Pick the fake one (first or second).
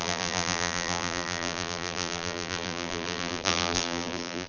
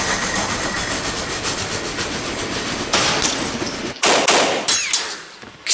first